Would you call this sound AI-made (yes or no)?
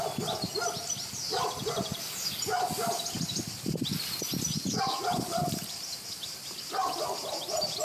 no